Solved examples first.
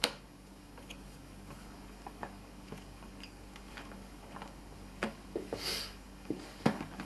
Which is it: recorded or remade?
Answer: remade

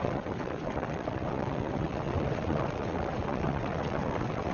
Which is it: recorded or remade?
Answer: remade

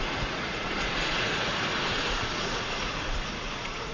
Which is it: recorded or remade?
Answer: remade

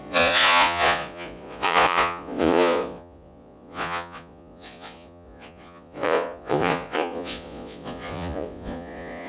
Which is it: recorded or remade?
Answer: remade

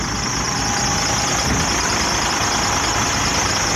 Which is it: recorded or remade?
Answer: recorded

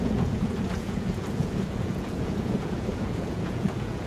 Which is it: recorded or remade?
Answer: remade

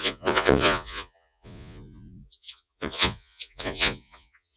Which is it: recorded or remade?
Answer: remade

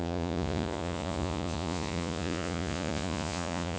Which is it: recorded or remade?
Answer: remade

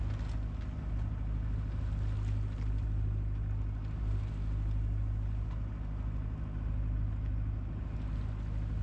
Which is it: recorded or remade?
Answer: recorded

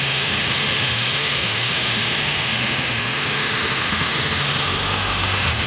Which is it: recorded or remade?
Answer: remade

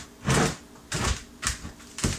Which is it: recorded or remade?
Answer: recorded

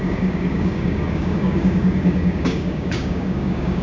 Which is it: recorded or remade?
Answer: remade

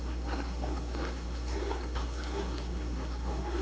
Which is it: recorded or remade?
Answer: remade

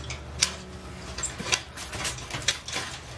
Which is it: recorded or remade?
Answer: recorded